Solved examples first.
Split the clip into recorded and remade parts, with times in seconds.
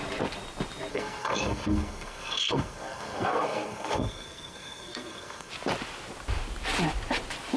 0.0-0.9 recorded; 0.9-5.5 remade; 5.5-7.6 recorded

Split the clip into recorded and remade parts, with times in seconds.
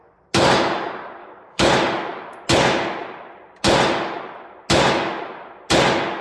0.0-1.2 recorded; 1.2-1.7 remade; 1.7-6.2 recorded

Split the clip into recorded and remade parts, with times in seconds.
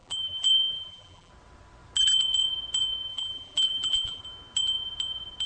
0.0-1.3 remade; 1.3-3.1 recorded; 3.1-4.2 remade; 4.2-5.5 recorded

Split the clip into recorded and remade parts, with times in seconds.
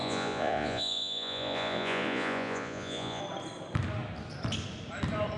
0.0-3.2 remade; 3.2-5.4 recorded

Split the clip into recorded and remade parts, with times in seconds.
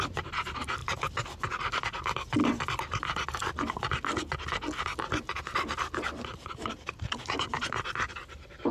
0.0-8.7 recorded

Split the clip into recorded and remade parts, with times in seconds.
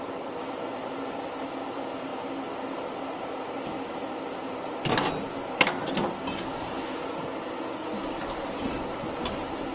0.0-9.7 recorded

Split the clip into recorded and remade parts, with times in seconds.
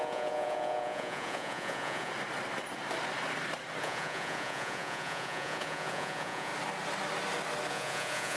0.0-2.1 remade; 2.1-3.8 recorded; 3.8-6.5 remade; 6.5-7.7 recorded; 7.7-8.4 remade